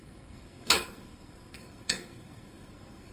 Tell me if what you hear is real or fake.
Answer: fake